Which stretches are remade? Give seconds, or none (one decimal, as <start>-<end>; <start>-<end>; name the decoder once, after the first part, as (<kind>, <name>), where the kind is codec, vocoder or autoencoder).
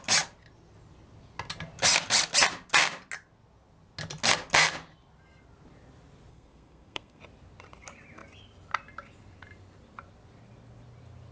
6.3-7.2 (codec, SNAC)